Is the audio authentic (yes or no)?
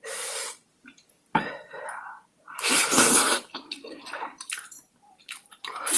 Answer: yes